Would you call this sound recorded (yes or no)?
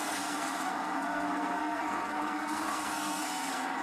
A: no